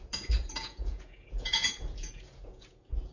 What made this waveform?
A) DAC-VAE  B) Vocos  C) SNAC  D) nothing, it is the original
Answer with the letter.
B